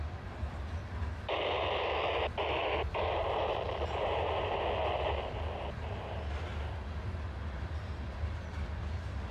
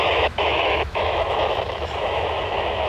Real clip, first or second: first